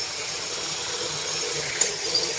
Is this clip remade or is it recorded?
remade